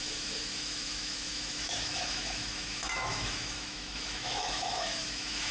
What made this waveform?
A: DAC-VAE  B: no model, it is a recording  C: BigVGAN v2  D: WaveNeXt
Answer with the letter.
A